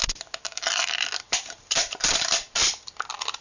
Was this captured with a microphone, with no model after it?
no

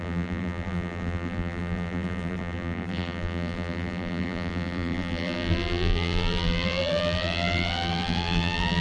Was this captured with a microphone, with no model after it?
no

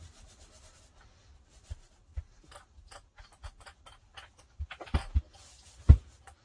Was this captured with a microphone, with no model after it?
no